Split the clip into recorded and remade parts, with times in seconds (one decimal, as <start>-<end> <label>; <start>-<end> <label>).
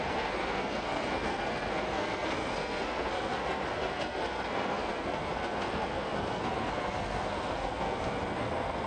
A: 0.0-8.9 remade